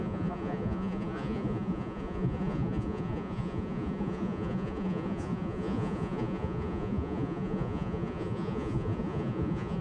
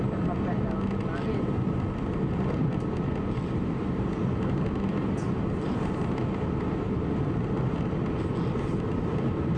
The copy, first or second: first